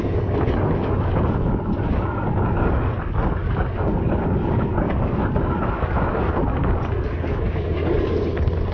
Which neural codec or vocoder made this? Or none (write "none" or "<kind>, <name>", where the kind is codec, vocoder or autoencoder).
codec, DAC